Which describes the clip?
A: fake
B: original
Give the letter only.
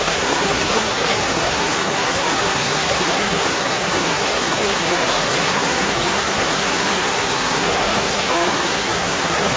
A